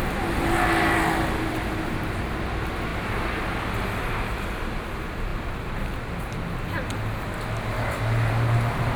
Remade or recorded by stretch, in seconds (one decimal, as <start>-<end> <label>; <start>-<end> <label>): 0.0-9.0 recorded